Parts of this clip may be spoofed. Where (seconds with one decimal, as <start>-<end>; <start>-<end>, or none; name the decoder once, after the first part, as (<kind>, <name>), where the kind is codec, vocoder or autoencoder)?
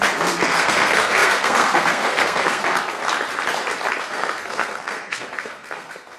0.0-3.0 (codec, SNAC); 4.0-6.2